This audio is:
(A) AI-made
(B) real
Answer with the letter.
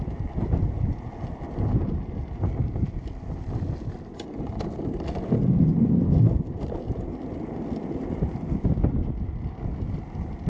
B